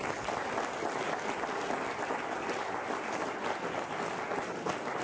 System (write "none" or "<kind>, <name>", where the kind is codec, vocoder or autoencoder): none